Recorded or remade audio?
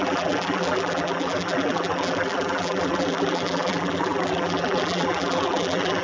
remade